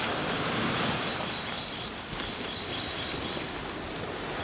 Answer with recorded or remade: recorded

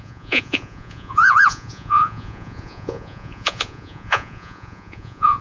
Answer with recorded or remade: remade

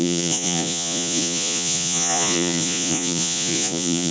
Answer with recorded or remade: remade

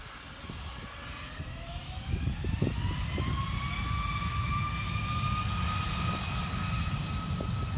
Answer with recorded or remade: recorded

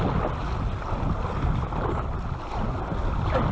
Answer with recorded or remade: recorded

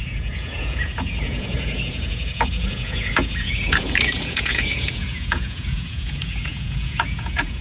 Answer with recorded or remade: remade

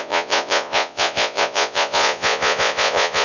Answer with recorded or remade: remade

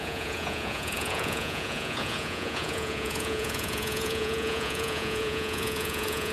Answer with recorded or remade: remade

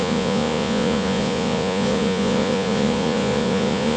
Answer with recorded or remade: remade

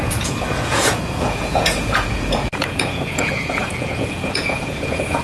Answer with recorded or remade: remade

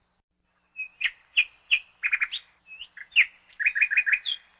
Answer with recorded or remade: recorded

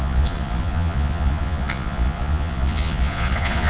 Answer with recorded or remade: remade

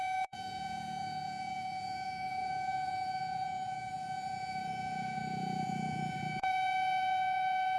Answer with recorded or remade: remade